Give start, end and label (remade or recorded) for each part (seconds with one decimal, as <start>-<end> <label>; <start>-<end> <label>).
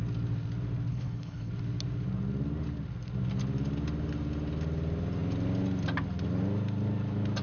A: 0.0-0.9 recorded; 0.9-1.5 remade; 1.5-7.4 recorded